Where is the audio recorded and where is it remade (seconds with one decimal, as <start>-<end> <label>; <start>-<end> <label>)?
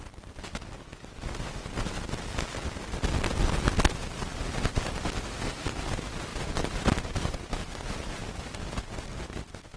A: 0.0-9.8 recorded